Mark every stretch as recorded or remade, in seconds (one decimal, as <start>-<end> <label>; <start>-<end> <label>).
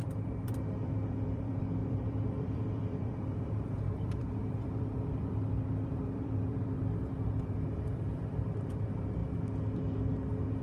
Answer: 0.0-9.2 remade; 9.2-10.6 recorded